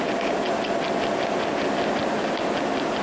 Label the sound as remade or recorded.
recorded